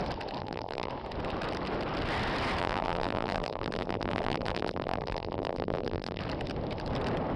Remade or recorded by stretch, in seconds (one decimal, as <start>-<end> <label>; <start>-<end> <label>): 0.0-0.4 recorded; 0.4-0.9 remade; 0.9-2.6 recorded; 2.6-6.2 remade; 6.2-7.4 recorded